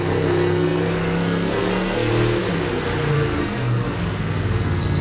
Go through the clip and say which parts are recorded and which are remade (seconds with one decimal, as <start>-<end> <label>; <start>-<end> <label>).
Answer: 0.0-2.1 remade; 2.1-3.1 recorded; 3.1-5.0 remade

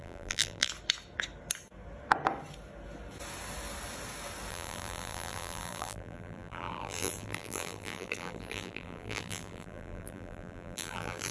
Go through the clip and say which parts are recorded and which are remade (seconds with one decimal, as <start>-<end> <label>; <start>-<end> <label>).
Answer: 0.0-0.7 remade; 0.7-4.5 recorded; 4.5-11.3 remade

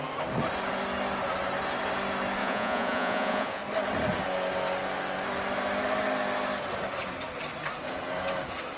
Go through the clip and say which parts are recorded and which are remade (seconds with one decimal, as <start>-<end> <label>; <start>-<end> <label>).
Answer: 0.0-2.4 recorded; 2.4-3.6 remade; 3.6-8.8 recorded